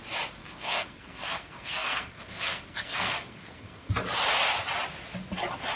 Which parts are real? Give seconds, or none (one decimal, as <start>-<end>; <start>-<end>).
0.0-0.4; 3.9-5.8